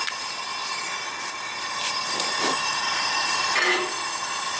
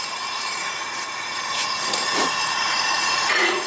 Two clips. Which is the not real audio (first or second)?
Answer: second